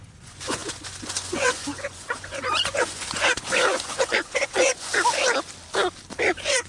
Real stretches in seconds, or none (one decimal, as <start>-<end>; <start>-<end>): 4.9-6.3